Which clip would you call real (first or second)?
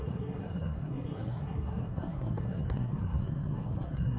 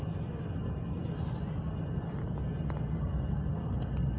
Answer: second